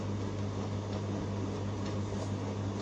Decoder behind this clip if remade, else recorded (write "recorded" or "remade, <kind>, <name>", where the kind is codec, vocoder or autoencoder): recorded